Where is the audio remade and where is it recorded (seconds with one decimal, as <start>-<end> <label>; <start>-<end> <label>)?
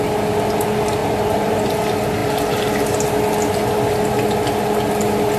0.0-1.0 recorded; 1.0-1.7 remade; 1.7-5.4 recorded